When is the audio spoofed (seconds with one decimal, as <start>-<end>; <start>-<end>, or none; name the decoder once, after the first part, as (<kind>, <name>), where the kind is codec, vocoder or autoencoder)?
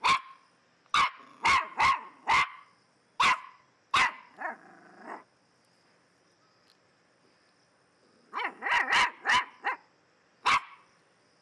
none